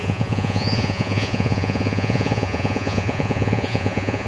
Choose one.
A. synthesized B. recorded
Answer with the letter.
A